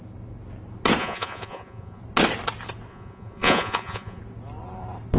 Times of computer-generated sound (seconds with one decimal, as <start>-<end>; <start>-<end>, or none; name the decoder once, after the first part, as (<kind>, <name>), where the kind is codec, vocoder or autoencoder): 1.0-2.0 (vocoder, Vocos); 2.9-4.2